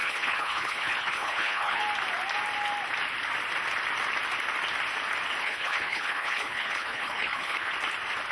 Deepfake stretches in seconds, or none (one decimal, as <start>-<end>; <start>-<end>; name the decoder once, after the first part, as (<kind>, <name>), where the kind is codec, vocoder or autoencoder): 0.0-1.8 (codec, HILCodec); 5.4-7.7